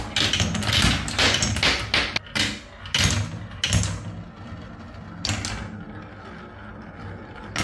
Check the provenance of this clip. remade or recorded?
recorded